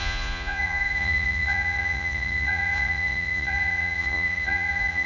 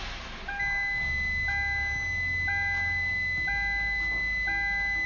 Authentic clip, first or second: second